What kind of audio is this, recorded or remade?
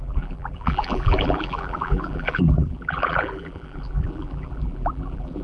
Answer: remade